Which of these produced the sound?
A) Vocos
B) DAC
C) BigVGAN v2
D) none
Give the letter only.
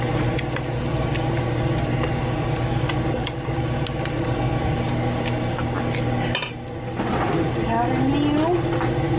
D